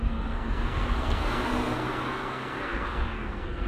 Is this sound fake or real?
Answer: fake